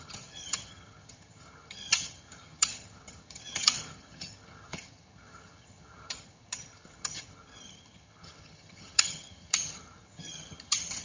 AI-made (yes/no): yes